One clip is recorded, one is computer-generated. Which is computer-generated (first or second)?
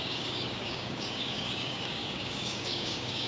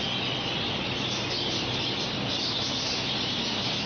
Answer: first